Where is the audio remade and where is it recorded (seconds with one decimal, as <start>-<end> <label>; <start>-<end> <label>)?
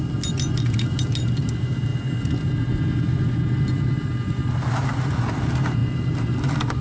0.0-6.8 recorded